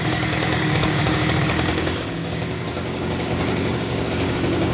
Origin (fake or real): fake